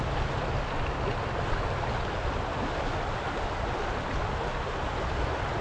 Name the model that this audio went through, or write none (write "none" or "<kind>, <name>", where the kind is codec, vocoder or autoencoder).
none